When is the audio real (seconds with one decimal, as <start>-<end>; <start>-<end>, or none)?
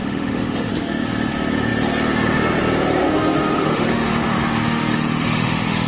0.7-3.0